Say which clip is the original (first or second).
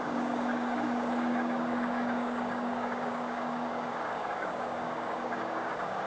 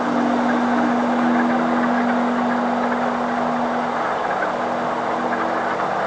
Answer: second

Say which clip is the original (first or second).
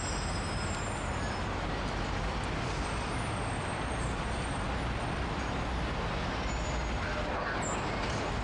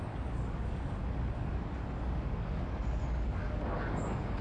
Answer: first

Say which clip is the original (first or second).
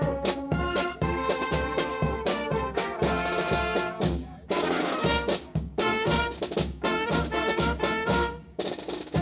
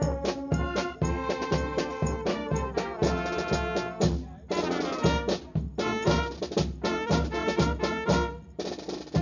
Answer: second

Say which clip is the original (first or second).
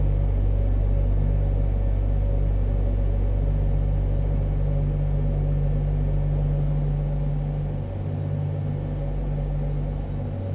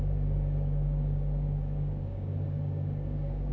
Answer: first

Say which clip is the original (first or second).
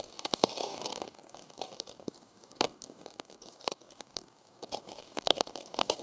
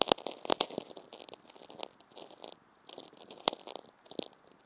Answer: second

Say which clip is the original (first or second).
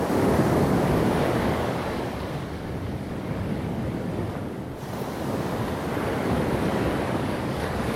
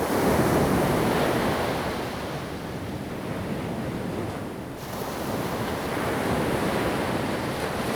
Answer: second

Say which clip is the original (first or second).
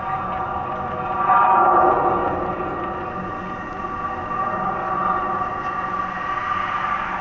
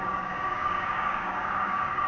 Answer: first